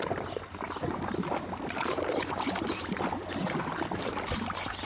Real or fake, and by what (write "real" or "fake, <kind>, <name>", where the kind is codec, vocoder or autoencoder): fake, vocoder, BigVGAN v2